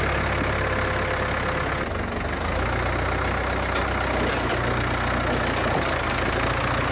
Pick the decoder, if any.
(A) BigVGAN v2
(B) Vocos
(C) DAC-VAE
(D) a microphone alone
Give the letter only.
D